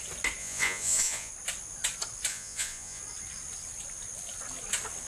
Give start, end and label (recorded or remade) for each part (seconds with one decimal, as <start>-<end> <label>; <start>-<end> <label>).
0.0-0.4 recorded; 0.4-1.3 remade; 1.3-2.3 recorded; 2.3-3.0 remade; 3.0-5.1 recorded